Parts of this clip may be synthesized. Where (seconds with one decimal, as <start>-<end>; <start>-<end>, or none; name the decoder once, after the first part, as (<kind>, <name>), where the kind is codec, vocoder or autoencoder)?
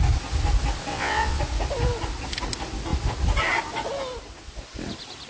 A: 0.9-1.4 (vocoder, WaveNeXt)